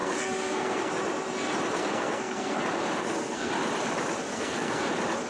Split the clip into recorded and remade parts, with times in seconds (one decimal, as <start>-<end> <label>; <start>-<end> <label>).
0.0-0.9 remade; 0.9-1.8 recorded; 1.8-2.6 remade; 2.6-3.0 recorded; 3.0-3.5 remade; 3.5-4.3 recorded; 4.3-4.8 remade; 4.8-5.3 recorded

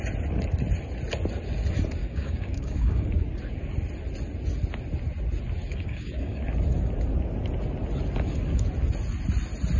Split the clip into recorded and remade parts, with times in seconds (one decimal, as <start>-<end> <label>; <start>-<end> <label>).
0.0-2.0 recorded; 2.0-3.1 remade; 3.1-5.7 recorded; 5.7-6.4 remade; 6.4-9.8 recorded